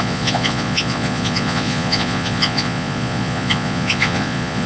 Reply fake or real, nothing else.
fake